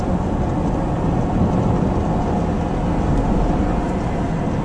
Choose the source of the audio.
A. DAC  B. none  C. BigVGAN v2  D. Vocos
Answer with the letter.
B